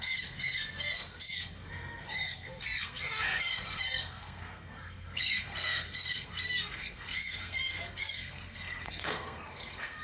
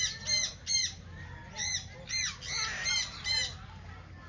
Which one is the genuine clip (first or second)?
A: second